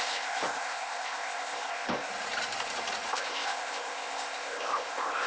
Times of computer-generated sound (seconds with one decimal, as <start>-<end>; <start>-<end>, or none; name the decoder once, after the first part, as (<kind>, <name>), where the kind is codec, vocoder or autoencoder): 0.0-2.1 (codec, ZipCodec); 3.1-5.3